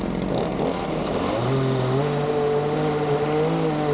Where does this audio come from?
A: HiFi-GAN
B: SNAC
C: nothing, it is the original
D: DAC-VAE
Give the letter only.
C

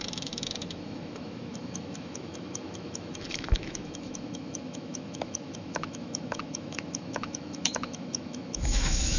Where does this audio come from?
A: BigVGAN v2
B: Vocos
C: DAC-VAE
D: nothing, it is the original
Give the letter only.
C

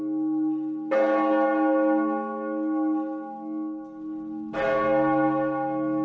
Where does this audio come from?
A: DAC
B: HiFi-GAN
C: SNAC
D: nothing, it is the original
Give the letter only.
D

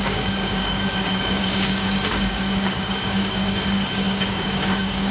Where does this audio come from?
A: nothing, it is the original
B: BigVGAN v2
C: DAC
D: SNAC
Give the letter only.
C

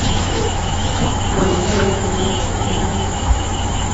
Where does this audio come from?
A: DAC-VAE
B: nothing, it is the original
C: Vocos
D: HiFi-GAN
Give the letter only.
A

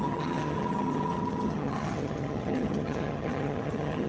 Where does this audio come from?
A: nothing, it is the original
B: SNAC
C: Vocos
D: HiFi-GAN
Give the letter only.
D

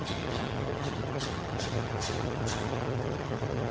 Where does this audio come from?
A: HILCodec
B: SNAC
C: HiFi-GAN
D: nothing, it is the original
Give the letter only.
C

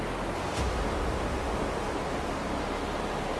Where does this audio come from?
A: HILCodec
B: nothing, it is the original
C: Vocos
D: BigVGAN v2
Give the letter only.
B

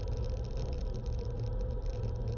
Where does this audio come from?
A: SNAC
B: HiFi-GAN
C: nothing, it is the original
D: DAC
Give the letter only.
C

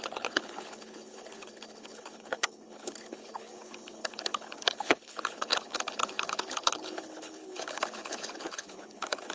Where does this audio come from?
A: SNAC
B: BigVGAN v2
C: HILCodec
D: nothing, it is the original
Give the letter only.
C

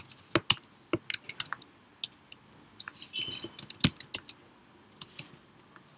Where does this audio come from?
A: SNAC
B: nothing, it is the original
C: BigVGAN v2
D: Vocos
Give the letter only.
B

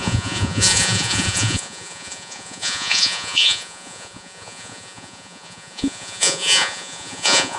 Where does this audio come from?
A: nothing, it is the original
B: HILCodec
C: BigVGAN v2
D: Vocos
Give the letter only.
D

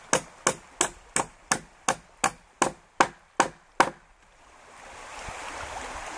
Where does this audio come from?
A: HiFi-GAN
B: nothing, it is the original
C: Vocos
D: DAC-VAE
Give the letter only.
B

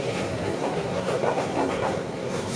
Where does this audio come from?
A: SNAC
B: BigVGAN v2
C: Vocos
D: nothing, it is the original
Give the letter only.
A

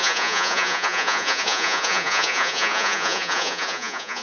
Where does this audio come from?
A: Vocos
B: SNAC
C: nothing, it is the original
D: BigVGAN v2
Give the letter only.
A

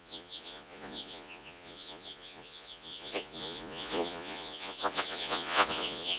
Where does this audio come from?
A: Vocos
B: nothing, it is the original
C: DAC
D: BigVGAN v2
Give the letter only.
A